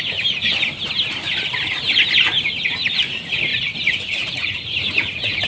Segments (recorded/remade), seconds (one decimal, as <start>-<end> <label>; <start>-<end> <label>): 0.0-3.5 recorded; 3.5-5.5 remade